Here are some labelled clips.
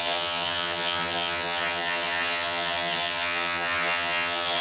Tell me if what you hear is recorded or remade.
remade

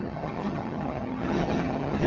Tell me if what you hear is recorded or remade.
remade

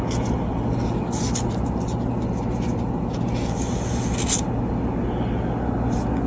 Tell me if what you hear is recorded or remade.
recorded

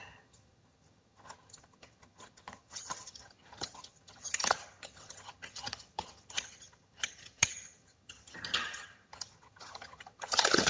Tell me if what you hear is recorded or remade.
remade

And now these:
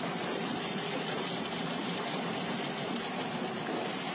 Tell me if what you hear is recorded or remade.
recorded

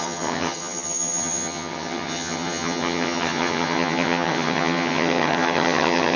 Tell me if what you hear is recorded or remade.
remade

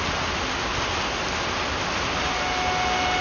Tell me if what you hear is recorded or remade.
recorded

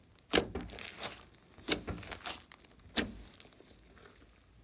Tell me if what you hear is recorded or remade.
recorded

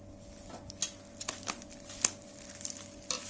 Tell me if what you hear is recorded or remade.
recorded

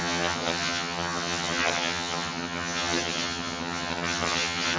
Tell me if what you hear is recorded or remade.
remade